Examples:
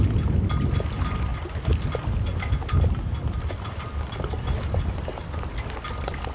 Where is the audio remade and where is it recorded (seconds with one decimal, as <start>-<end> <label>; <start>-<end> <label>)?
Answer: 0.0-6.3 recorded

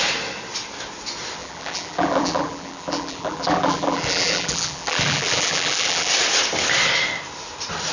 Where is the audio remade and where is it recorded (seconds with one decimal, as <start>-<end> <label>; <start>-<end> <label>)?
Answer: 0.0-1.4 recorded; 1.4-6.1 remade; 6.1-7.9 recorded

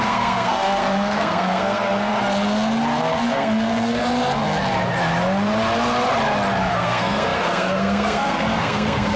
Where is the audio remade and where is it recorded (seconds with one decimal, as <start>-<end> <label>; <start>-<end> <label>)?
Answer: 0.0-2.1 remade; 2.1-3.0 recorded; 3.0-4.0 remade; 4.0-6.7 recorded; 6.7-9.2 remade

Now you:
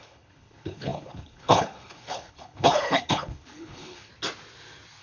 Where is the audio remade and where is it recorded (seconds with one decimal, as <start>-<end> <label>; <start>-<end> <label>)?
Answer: 0.0-4.1 remade; 4.1-5.0 recorded

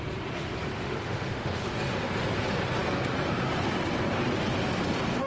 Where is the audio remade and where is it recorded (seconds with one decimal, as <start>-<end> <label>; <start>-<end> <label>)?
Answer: 0.0-0.7 recorded; 0.7-1.7 remade; 1.7-5.3 recorded

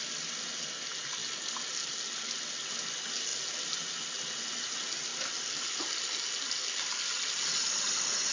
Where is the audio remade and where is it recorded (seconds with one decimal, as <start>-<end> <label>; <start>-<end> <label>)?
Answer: 0.0-8.3 recorded